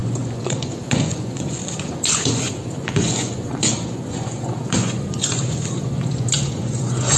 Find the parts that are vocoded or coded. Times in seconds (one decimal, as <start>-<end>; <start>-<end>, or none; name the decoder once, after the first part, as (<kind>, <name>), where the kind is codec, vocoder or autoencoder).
0.0-7.2 (vocoder, Vocos)